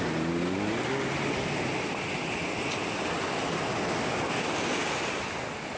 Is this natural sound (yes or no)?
yes